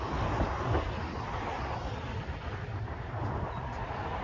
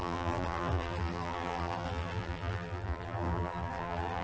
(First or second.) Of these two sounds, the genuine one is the first